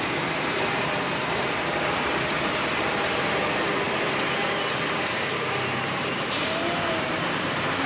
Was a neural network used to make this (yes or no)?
yes